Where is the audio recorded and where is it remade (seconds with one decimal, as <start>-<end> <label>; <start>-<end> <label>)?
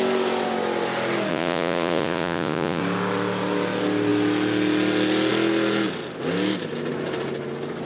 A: 0.0-1.3 recorded; 1.3-2.8 remade; 2.8-7.9 recorded